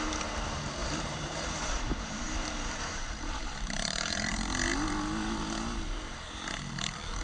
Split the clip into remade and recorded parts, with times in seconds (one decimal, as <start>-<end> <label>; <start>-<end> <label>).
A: 0.0-0.8 recorded; 0.8-4.3 remade; 4.3-7.2 recorded

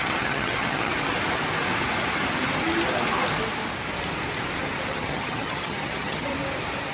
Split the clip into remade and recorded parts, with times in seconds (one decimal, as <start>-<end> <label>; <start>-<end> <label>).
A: 0.0-0.9 remade; 0.9-4.9 recorded; 4.9-6.3 remade; 6.3-6.9 recorded

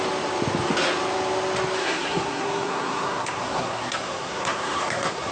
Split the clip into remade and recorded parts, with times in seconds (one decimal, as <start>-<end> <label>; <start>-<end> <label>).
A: 0.0-1.8 recorded; 1.8-5.3 remade